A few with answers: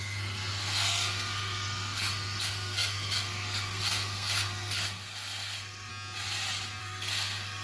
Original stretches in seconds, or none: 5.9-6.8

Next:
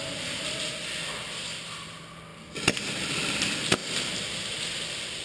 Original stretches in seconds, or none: 0.0-5.2

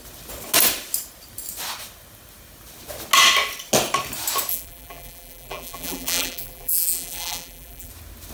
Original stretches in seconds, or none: 0.0-4.5; 7.9-8.3

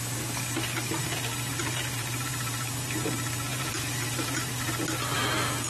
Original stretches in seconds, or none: 0.0-1.7; 3.1-3.5; 5.2-5.7

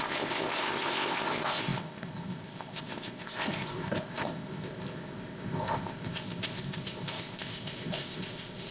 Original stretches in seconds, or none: none